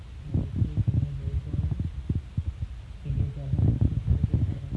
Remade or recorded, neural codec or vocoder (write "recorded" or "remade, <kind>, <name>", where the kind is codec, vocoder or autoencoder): recorded